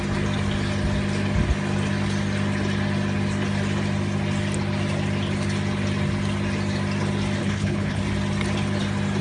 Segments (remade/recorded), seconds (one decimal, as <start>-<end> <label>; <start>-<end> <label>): 0.0-7.4 recorded; 7.4-8.0 remade; 8.0-9.2 recorded